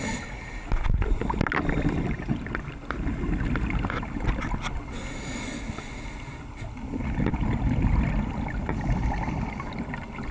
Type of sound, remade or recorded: recorded